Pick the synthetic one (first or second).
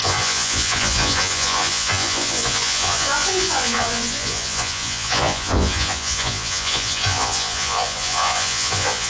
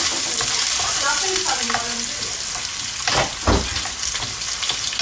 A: first